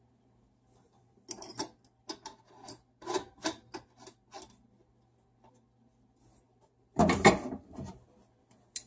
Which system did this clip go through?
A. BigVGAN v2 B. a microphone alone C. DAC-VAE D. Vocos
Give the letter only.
B